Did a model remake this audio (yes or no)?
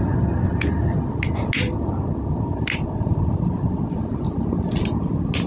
no